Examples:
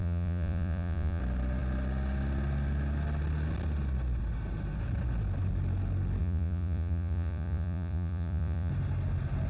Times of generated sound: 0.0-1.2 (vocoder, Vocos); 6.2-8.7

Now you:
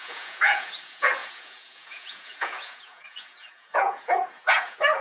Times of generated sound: 0.0-5.0 (vocoder, Vocos)